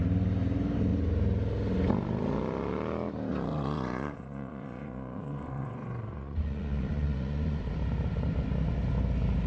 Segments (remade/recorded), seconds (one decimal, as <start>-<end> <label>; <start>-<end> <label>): 0.0-3.5 recorded; 3.5-7.7 remade; 7.7-9.5 recorded